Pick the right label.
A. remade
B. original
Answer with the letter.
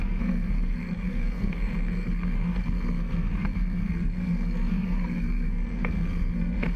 A